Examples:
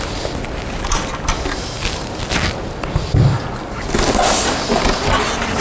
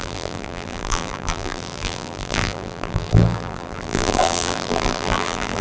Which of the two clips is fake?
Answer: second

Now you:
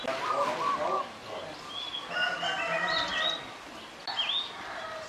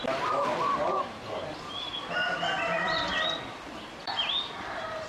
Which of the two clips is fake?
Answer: second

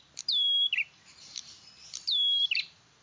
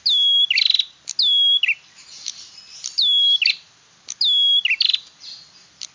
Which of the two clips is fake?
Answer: first